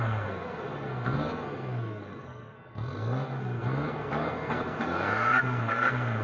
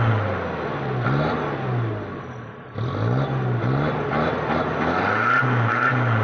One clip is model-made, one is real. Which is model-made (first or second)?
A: first